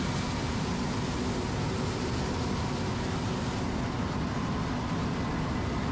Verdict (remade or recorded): recorded